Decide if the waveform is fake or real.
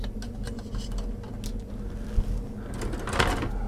real